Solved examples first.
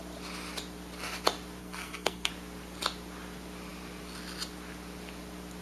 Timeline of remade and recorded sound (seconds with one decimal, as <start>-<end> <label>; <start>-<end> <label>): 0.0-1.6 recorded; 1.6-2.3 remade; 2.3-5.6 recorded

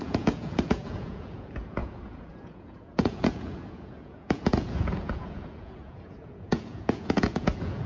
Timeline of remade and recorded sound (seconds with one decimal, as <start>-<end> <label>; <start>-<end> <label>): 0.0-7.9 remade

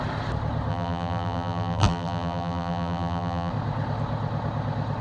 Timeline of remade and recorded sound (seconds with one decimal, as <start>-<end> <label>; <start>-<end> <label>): 0.0-0.7 recorded; 0.7-3.5 remade; 3.5-5.0 recorded

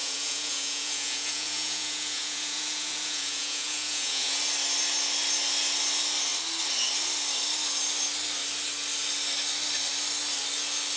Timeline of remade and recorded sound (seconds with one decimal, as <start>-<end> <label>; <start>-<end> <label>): 0.0-4.4 remade; 4.4-11.0 recorded

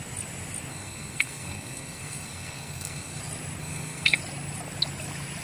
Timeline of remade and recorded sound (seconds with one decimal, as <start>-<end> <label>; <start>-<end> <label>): 0.0-0.7 recorded; 0.7-3.2 remade; 3.2-3.6 recorded; 3.6-4.2 remade; 4.2-5.4 recorded

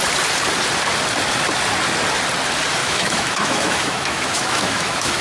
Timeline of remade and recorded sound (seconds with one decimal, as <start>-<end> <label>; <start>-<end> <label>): 0.0-2.8 recorded; 2.8-5.2 remade

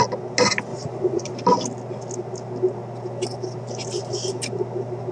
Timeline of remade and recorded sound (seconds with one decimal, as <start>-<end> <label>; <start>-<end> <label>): 0.0-0.7 recorded; 0.7-1.3 remade; 1.3-5.1 recorded

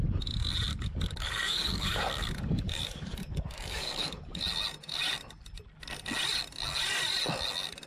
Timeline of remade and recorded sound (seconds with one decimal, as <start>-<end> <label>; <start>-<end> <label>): 0.0-0.7 recorded; 0.7-4.4 remade; 4.4-7.9 recorded